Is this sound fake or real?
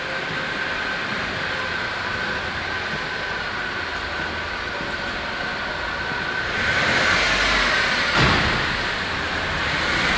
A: real